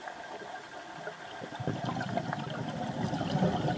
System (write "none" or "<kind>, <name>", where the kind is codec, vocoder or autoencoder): none